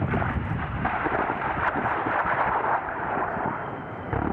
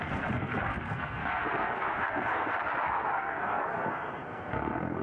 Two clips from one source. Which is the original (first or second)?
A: first